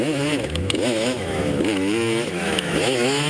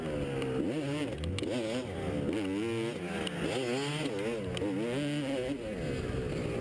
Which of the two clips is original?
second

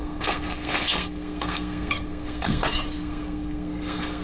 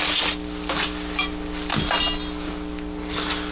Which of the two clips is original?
second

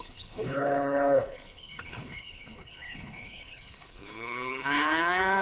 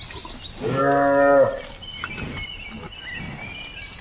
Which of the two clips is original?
second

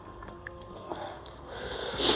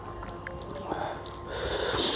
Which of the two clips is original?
second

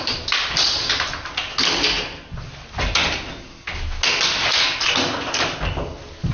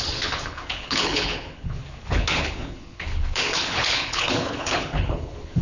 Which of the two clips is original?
first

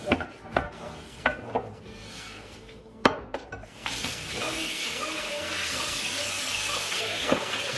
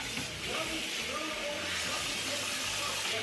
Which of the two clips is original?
second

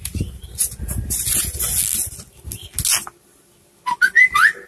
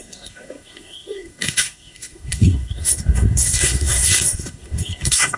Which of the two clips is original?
first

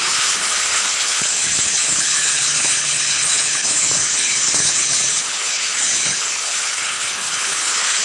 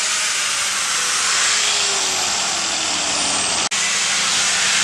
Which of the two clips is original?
second